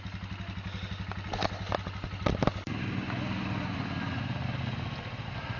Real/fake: real